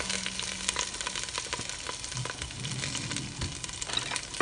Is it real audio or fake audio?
real